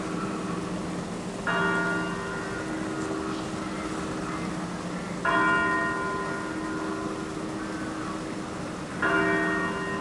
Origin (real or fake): real